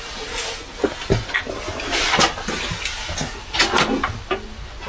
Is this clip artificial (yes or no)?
no